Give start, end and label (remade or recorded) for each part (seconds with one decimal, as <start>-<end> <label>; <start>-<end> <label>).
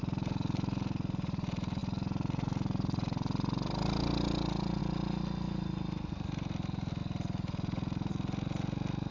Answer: 0.0-9.1 recorded